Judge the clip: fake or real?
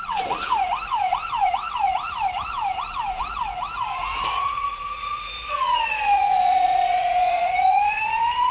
fake